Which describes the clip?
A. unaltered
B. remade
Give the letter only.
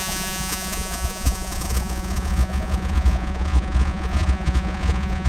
B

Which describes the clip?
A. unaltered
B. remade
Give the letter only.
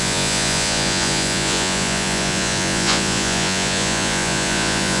B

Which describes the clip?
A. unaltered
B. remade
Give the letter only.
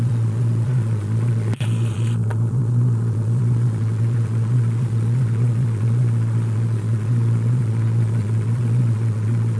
B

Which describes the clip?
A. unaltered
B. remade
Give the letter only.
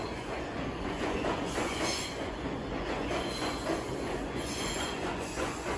B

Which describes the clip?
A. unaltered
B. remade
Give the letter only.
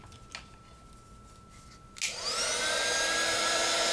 A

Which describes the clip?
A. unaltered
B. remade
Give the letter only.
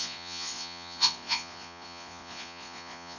B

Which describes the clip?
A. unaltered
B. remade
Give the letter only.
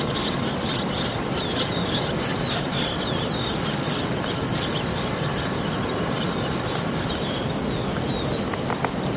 A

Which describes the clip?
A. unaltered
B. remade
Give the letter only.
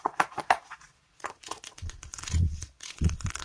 B